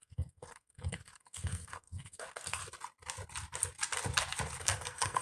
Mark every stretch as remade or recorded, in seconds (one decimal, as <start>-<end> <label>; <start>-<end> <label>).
0.0-2.6 remade; 2.6-4.6 recorded; 4.6-5.2 remade